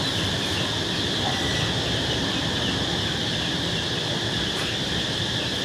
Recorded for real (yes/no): yes